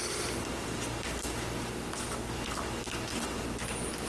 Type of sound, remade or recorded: recorded